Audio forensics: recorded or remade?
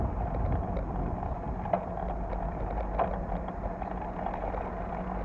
recorded